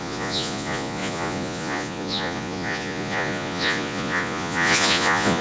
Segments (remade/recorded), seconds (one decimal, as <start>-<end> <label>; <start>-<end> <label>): 0.0-5.4 remade